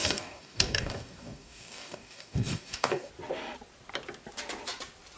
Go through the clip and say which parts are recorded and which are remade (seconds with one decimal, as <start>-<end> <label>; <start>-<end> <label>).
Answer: 0.0-3.1 remade; 3.1-5.2 recorded